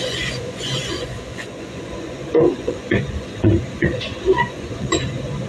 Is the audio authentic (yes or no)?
no